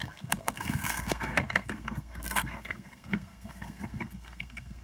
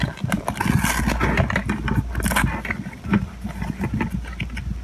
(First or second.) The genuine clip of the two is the second